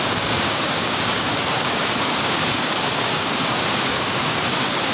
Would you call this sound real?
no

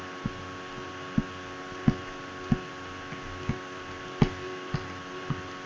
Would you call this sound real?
yes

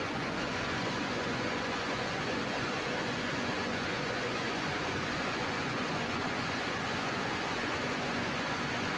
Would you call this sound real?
no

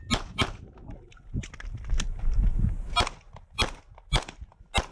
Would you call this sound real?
yes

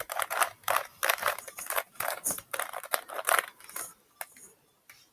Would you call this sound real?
no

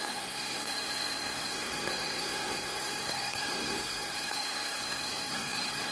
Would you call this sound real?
no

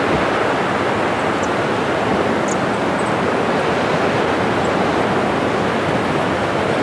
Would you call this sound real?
yes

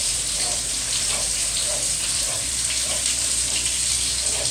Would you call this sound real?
no